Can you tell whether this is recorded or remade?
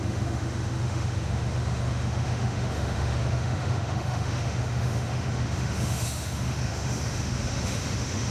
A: remade